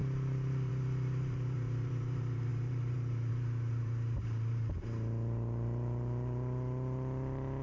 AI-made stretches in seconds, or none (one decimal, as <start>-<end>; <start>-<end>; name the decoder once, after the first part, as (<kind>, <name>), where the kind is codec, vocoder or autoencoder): 0.0-7.6 (vocoder, BigVGAN v2)